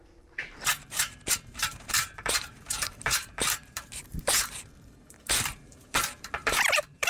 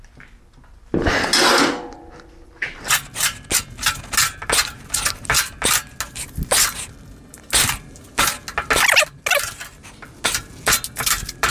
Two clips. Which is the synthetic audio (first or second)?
first